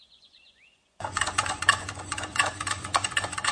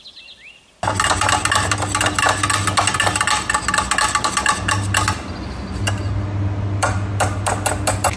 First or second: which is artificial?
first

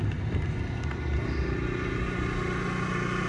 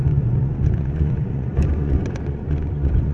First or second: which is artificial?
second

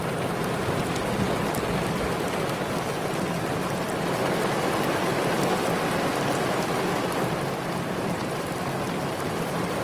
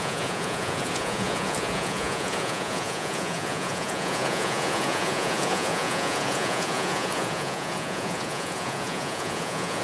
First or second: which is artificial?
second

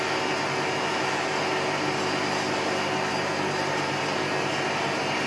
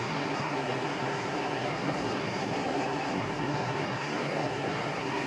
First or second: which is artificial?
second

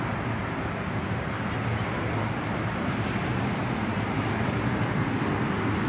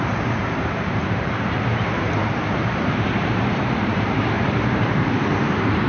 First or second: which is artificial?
second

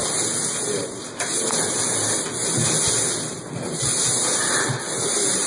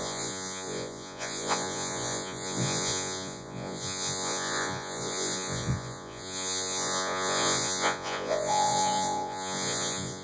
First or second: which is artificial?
second